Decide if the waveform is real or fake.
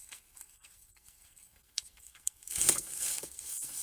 fake